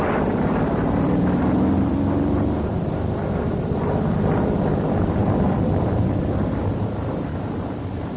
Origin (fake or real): fake